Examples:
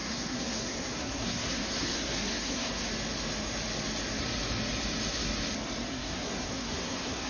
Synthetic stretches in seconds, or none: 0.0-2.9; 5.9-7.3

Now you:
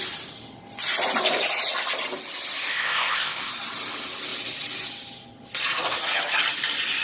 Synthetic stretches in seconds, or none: 2.7-3.5